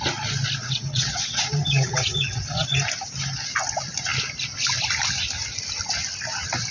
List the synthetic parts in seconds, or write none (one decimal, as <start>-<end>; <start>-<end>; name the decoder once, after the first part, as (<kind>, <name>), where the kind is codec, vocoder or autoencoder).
0.6-2.8 (vocoder, WaveNeXt)